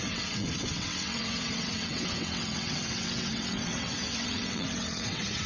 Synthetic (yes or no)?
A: yes